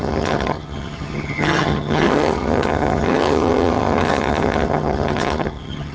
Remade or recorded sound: remade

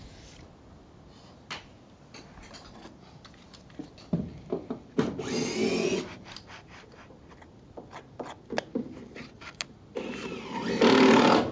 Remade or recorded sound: recorded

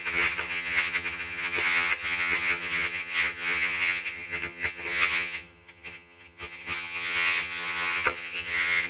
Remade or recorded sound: remade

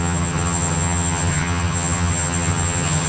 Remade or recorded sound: remade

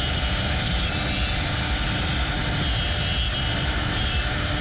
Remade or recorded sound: recorded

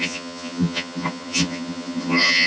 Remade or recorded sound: remade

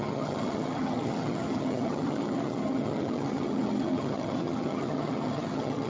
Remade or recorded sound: remade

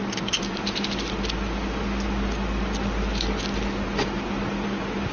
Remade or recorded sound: recorded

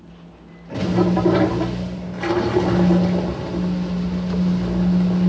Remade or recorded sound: recorded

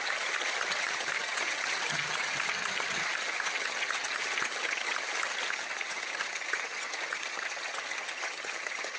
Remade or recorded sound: remade